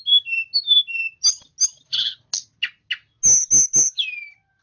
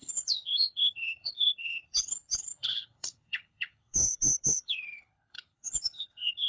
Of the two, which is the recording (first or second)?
first